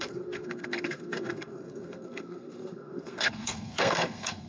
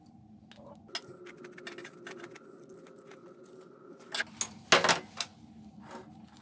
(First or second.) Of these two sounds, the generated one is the first